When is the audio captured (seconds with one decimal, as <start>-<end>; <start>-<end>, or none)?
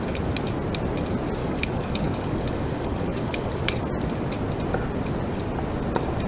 0.0-1.4; 3.6-6.3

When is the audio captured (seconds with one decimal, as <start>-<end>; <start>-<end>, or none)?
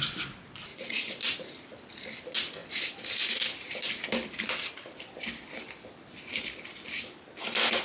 0.0-0.7; 1.2-7.8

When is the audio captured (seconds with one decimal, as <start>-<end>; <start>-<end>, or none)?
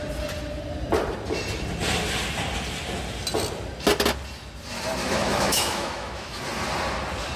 0.0-5.0; 6.4-7.4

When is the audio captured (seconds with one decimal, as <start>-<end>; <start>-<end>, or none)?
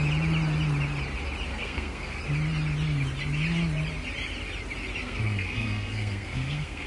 0.0-1.5; 2.2-5.0